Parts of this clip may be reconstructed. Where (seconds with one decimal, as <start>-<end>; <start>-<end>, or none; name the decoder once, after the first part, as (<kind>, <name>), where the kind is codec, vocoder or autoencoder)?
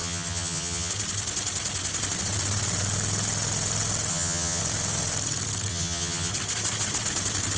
0.0-0.9 (vocoder, HiFi-GAN); 4.1-4.6; 5.7-6.3